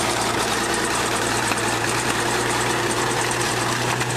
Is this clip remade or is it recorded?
remade